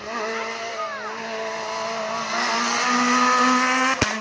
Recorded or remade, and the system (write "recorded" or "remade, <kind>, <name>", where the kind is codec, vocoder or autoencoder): recorded